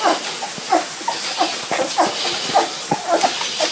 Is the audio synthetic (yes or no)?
no